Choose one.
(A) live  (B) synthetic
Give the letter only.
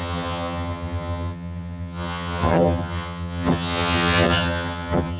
B